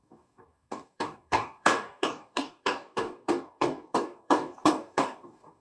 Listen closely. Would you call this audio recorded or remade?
remade